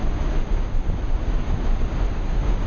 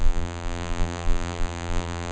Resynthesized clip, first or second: second